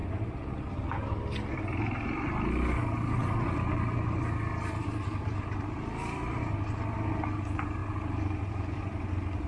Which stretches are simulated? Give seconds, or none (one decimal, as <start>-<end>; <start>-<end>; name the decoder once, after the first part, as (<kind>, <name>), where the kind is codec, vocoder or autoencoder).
3.2-6.4 (vocoder, BigVGAN v2); 7.8-8.8